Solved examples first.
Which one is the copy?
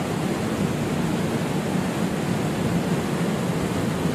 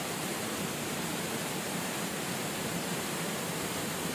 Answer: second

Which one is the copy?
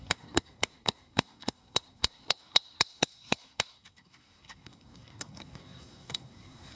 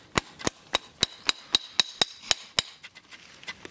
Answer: first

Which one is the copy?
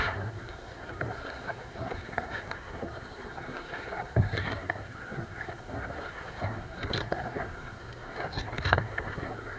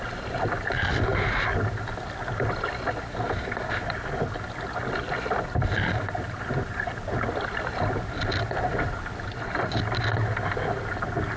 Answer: first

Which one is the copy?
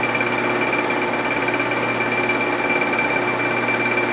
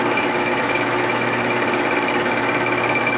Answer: second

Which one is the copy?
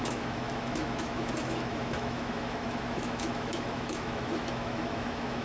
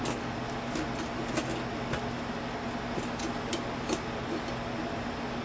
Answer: first